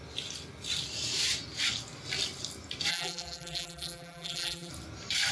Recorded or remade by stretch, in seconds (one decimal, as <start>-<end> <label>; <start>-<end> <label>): 0.0-2.9 recorded; 2.9-4.7 remade; 4.7-5.3 recorded